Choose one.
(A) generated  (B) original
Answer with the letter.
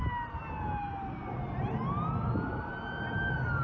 B